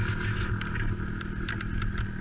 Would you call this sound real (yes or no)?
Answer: yes